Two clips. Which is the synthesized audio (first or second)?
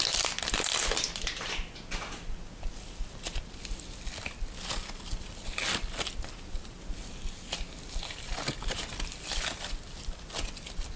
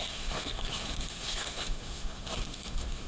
second